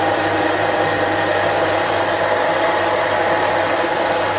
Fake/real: real